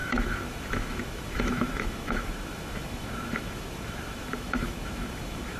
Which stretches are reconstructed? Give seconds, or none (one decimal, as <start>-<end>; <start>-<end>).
0.0-5.6